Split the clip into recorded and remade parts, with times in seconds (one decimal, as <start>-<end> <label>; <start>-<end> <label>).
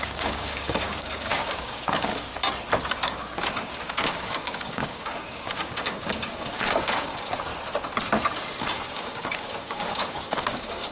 0.0-2.3 remade; 2.3-2.9 recorded; 2.9-7.5 remade; 7.5-8.6 recorded; 8.6-10.9 remade